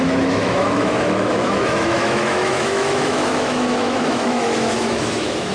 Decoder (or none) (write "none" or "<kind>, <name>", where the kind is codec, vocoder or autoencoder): autoencoder, DAC-VAE